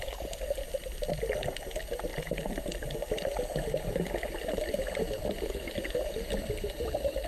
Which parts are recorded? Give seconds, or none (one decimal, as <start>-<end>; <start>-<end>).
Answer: 0.0-7.3